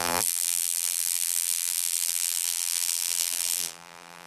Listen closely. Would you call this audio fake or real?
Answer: fake